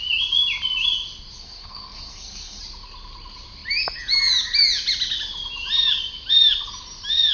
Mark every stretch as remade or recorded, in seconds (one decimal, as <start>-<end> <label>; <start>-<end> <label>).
0.0-1.4 recorded; 1.4-2.6 remade; 2.6-7.3 recorded